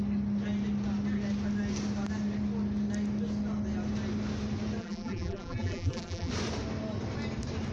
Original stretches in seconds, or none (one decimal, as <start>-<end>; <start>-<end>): 0.0-4.8; 6.3-7.7